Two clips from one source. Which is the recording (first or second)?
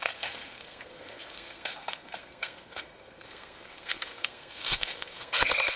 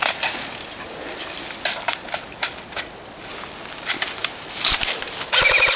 second